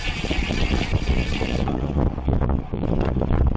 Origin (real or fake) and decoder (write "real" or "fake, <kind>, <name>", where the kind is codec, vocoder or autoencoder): fake, vocoder, Vocos